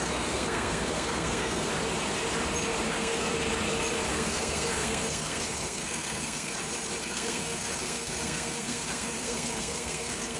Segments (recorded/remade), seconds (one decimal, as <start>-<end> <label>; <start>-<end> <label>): 0.0-1.7 remade; 1.7-2.9 recorded; 2.9-3.3 remade; 3.3-4.1 recorded; 4.1-6.5 remade; 6.5-7.0 recorded; 7.0-10.4 remade